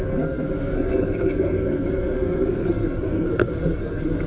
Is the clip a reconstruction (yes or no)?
yes